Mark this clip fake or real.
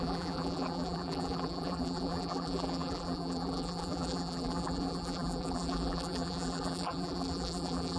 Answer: fake